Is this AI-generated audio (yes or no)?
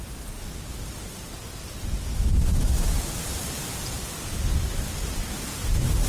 no